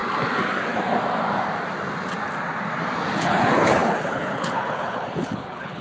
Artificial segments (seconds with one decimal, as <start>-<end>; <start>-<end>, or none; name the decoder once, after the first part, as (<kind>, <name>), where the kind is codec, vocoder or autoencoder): 3.2-5.8 (codec, HILCodec)